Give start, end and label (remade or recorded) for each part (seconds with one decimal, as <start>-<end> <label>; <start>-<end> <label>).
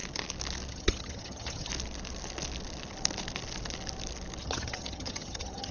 0.0-0.7 recorded; 0.7-1.7 remade; 1.7-4.4 recorded; 4.4-5.7 remade